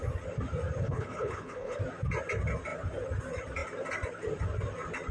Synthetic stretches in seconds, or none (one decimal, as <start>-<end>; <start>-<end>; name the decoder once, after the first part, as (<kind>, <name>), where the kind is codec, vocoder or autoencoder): 0.8-1.8 (codec, HILCodec)